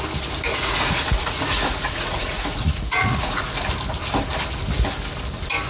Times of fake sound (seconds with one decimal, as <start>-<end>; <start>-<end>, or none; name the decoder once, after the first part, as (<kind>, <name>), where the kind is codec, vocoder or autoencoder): 0.5-3.5 (vocoder, Vocos)